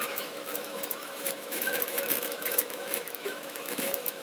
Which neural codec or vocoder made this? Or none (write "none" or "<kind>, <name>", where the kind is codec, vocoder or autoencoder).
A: autoencoder, DAC-VAE